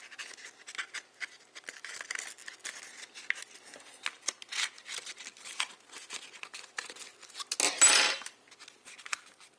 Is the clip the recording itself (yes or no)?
yes